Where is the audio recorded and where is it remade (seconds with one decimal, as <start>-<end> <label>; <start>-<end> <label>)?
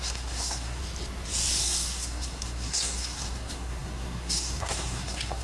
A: 0.0-0.8 remade; 0.8-1.6 recorded; 1.6-5.4 remade